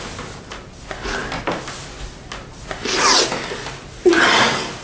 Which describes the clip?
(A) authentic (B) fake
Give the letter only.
A